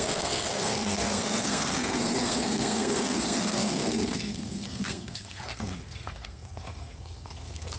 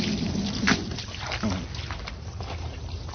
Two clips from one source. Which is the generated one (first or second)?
first